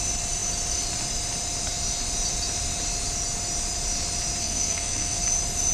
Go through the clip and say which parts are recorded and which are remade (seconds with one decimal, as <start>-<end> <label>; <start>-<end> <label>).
0.0-4.4 recorded; 4.4-5.2 remade; 5.2-5.7 recorded